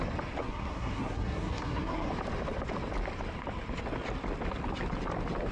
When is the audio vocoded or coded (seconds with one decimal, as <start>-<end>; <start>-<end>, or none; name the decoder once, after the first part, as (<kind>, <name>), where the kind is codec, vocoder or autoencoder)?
0.4-2.1 (codec, SNAC)